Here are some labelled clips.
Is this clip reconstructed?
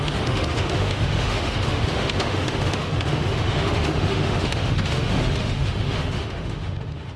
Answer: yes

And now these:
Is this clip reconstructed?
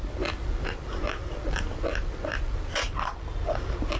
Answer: no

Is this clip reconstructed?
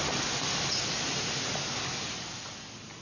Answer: no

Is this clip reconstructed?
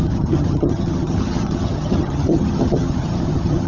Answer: yes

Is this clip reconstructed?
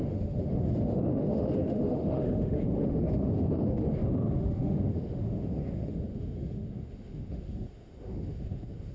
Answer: yes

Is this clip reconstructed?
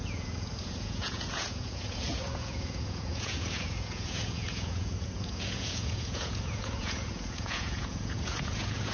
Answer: yes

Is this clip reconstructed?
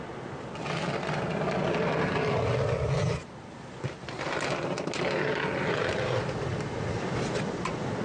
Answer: no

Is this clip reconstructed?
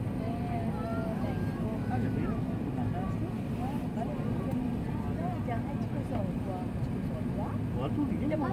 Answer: no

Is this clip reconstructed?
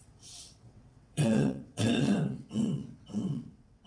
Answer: yes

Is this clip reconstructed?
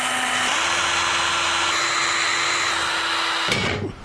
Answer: no